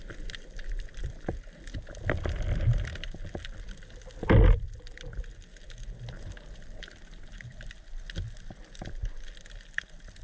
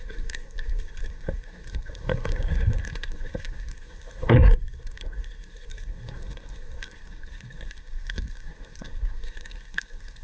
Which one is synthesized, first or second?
second